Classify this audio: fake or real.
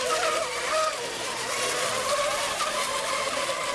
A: real